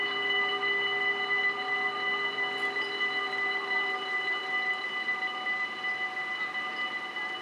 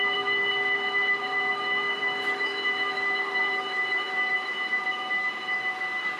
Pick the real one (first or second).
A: first